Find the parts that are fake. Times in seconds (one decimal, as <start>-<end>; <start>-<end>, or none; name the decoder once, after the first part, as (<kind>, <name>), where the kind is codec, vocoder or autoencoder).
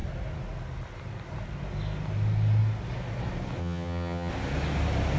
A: 3.6-4.3 (vocoder, HiFi-GAN)